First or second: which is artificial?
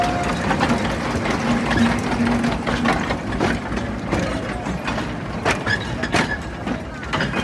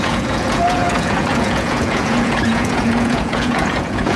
second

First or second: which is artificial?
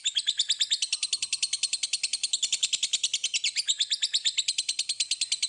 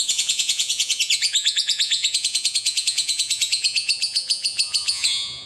second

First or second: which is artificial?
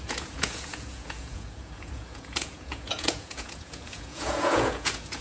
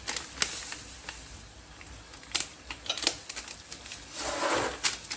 first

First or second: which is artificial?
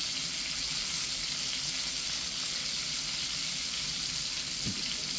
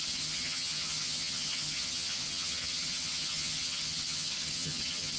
second